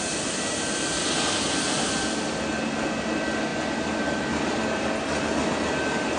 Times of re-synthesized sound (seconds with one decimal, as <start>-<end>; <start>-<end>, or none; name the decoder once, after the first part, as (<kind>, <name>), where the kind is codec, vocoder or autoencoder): none

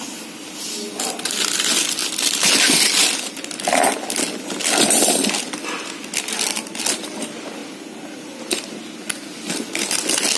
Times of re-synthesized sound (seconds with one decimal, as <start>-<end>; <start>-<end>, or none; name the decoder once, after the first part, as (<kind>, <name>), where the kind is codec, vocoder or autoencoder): 2.0-3.2 (vocoder, BigVGAN v2)